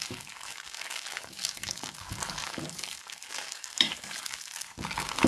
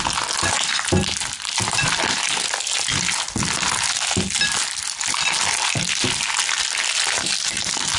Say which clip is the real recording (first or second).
second